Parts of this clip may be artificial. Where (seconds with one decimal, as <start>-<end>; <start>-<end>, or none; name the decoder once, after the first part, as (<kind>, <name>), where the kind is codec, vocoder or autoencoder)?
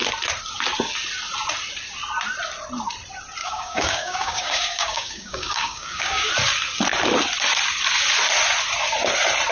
3.4-6.3 (codec, DAC)